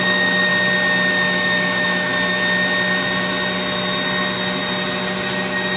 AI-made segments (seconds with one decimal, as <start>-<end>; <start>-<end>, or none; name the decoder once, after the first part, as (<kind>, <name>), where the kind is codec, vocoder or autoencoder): 0.0-0.5 (autoencoder, DAC-VAE); 1.1-2.1